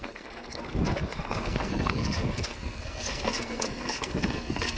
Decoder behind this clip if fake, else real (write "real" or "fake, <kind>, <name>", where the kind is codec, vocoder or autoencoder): fake, codec, SNAC